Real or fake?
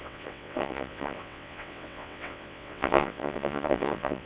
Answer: fake